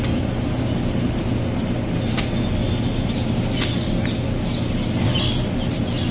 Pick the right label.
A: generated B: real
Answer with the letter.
B